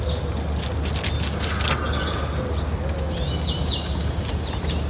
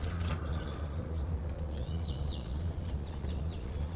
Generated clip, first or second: second